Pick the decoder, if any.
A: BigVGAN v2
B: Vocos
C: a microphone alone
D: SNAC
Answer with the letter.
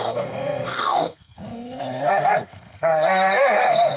D